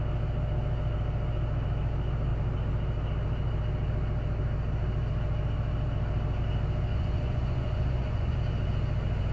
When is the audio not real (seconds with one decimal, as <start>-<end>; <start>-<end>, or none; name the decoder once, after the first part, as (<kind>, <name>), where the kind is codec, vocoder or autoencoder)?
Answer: 6.9-8.4 (vocoder, Vocos)